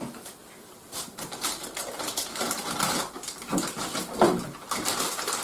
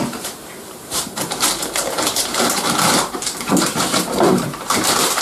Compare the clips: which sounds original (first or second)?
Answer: first